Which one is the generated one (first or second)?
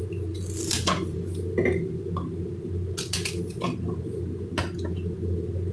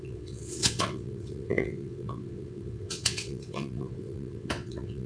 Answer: second